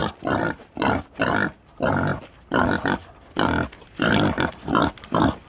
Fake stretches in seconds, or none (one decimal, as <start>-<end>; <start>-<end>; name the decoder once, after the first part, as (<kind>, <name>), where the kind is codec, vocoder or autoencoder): 0.0-1.2 (vocoder, BigVGAN v2); 2.1-2.7